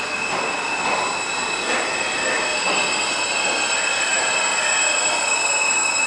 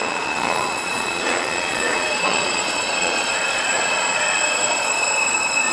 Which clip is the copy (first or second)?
second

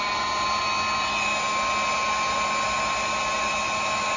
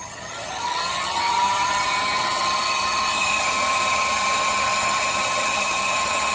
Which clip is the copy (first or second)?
second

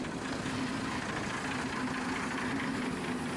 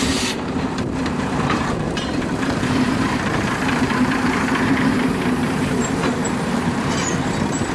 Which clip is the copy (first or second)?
second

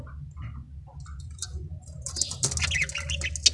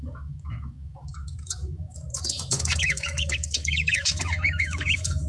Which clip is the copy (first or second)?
second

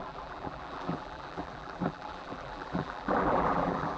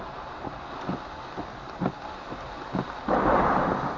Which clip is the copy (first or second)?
first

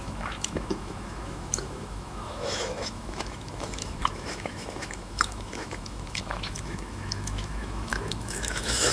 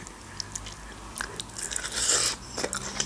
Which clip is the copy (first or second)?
first